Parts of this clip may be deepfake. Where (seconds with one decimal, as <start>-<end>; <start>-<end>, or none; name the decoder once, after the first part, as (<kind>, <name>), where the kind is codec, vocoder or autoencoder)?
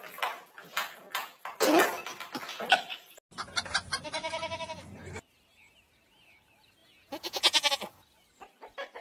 6.8-7.7 (vocoder, Vocos)